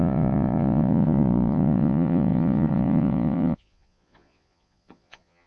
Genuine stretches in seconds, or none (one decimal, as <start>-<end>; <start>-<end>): none